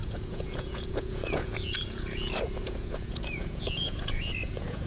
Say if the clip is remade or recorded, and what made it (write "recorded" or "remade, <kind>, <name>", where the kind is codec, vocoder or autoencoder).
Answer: remade, vocoder, Vocos